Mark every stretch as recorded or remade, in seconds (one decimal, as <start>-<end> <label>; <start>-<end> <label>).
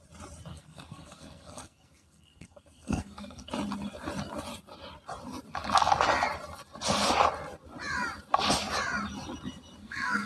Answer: 0.0-0.5 recorded; 0.5-3.5 remade; 3.5-9.8 recorded; 9.8-10.3 remade